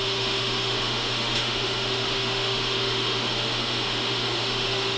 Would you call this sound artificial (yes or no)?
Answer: yes